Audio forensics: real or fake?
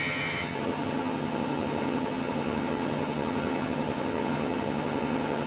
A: fake